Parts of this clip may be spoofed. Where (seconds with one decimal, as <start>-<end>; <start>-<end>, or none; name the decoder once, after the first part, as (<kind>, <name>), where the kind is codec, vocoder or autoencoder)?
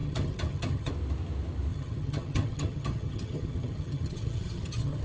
0.0-0.9 (vocoder, HiFi-GAN); 1.7-5.0